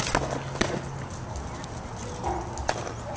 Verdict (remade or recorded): recorded